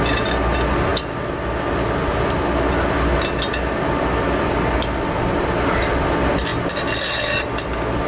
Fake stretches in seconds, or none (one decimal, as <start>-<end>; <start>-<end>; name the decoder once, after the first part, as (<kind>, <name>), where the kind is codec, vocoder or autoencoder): none